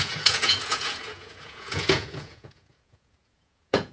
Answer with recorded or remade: remade